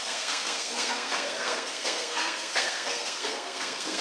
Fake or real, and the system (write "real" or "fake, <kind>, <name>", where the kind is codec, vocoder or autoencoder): fake, codec, SNAC